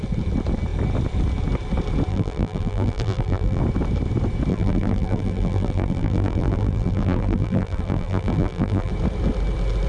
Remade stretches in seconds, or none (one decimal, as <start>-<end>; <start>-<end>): 2.1-3.6; 4.5-8.9